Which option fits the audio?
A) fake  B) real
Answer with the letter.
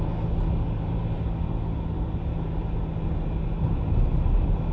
B